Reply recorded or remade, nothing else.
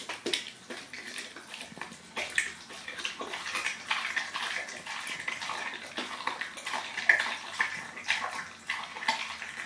recorded